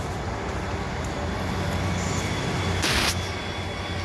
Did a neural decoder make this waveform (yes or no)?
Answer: no